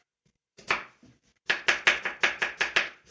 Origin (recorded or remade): recorded